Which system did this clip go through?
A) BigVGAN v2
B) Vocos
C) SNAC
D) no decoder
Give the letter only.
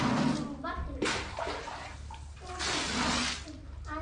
D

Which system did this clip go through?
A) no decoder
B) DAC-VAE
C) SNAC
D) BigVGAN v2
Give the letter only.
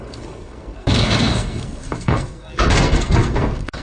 C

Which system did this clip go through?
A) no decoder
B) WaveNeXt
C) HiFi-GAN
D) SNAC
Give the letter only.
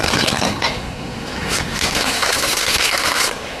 D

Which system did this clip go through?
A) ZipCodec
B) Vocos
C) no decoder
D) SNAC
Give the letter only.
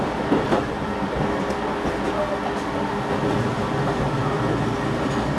C